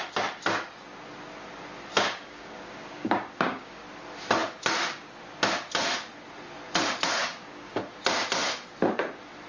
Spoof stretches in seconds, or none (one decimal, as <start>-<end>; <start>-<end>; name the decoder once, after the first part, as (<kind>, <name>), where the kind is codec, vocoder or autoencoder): 1.9-3.8 (codec, DAC); 7.2-7.8